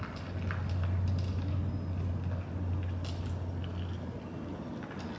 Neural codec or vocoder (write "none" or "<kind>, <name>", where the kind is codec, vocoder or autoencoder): none